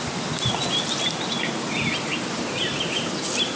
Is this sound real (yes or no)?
yes